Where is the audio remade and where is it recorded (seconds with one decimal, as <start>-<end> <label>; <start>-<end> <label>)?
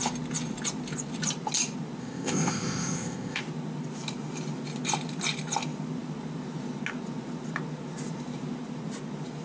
0.0-2.0 recorded; 2.0-3.4 remade; 3.4-9.4 recorded